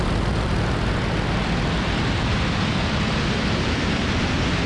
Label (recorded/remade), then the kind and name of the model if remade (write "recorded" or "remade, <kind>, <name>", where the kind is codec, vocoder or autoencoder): remade, vocoder, BigVGAN v2